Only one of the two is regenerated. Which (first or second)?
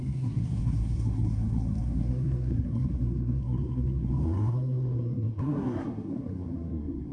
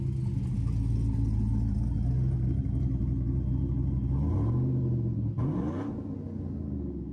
first